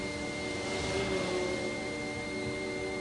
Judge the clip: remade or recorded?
recorded